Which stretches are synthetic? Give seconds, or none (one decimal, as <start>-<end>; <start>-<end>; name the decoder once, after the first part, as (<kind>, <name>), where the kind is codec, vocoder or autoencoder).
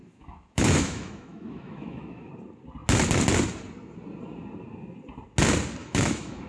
0.0-2.3 (autoencoder, DAC-VAE); 5.8-6.5